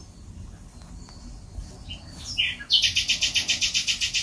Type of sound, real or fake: real